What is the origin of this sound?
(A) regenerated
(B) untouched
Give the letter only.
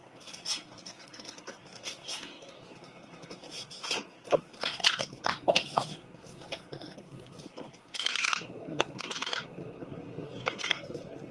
A